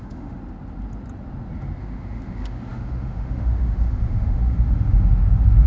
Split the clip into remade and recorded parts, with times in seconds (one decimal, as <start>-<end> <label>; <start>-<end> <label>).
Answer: 0.0-0.4 remade; 0.4-1.8 recorded; 1.8-5.7 remade